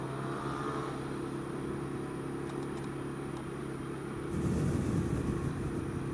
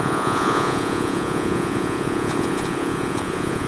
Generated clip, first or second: second